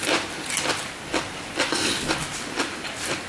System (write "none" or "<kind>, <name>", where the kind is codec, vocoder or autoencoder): none